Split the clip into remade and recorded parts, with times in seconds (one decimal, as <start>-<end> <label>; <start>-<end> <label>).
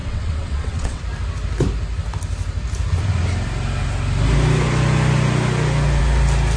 0.0-1.0 remade; 1.0-6.6 recorded